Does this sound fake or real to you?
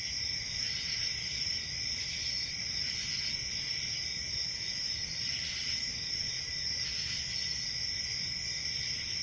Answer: real